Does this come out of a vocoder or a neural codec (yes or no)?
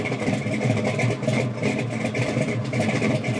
yes